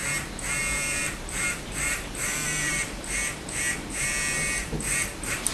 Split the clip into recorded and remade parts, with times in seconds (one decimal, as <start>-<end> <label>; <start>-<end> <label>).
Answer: 0.0-0.6 recorded; 0.6-3.2 remade; 3.2-3.9 recorded; 3.9-5.5 remade